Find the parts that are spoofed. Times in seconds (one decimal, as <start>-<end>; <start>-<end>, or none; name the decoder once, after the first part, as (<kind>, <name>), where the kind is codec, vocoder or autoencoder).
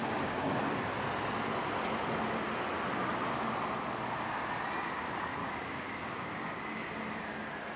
0.0-0.6 (codec, DAC); 5.4-6.9